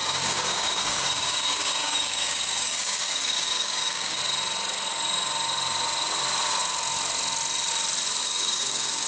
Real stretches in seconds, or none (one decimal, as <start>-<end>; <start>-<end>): 4.2-8.2